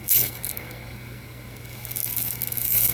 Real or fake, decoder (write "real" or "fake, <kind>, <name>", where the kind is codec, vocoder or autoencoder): fake, codec, SNAC